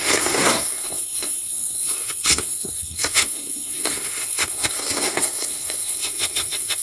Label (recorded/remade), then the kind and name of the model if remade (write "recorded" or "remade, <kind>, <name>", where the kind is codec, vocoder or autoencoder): remade, codec, SNAC